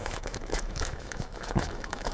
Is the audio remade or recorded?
remade